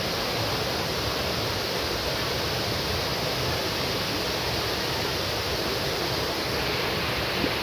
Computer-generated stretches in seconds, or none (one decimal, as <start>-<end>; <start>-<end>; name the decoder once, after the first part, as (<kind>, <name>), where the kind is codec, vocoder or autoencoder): none